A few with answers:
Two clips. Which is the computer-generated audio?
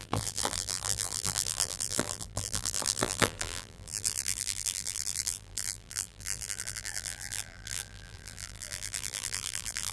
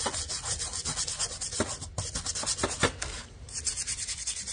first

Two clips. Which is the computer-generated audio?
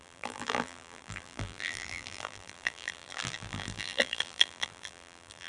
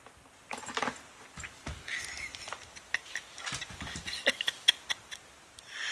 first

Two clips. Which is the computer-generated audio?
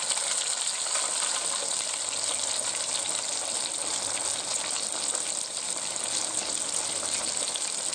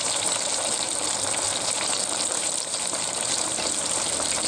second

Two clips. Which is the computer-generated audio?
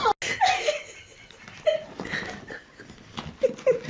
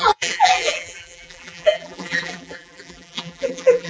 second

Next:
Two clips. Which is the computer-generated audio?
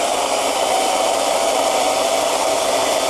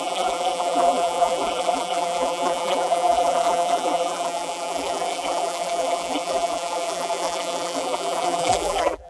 second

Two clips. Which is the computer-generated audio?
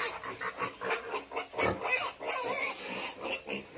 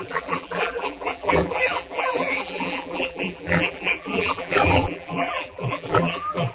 second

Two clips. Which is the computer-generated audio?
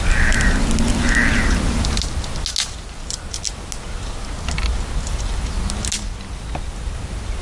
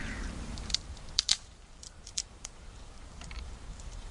second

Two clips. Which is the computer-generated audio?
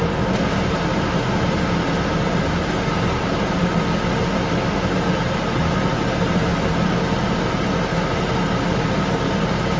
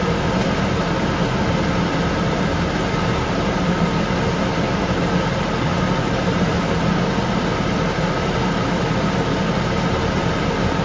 second